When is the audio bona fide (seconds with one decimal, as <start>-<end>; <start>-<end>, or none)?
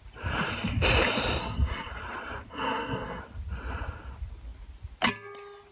0.0-1.4; 1.9-2.5; 3.2-5.7